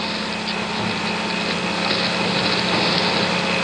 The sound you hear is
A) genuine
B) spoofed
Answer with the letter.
A